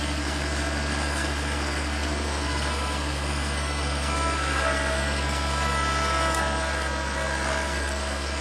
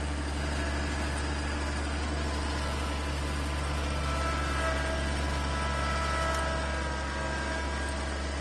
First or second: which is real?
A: second